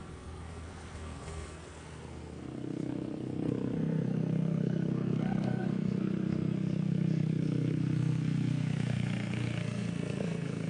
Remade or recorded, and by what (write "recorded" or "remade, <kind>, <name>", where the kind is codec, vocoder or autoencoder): remade, codec, SNAC